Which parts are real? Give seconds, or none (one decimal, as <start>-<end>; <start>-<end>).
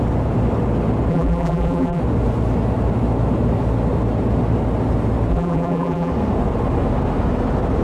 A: 0.0-1.1; 2.0-5.3; 6.1-7.8